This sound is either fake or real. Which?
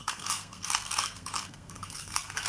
fake